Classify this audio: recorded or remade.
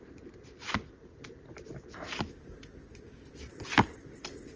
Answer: recorded